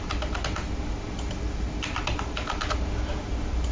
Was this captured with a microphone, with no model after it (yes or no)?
yes